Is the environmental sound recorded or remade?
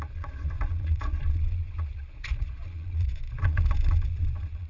remade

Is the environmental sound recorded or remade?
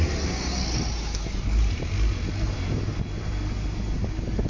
recorded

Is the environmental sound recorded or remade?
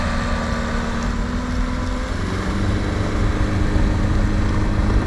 recorded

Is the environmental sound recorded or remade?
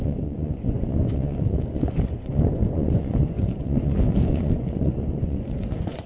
remade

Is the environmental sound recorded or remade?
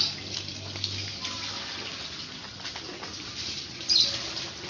recorded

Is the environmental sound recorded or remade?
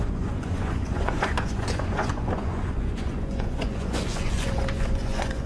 remade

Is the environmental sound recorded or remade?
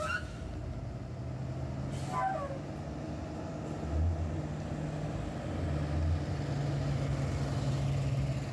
recorded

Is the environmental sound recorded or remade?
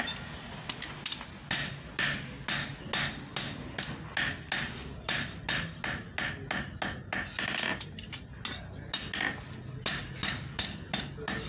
recorded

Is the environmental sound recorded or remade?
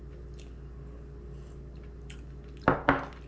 recorded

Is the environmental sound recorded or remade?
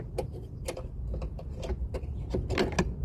recorded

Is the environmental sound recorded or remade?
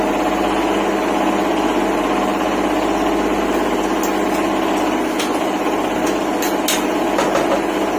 recorded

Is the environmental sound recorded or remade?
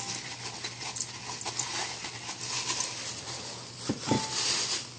recorded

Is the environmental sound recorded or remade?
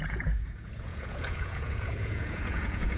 remade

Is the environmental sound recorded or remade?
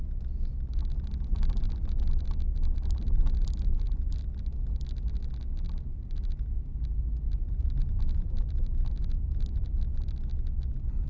recorded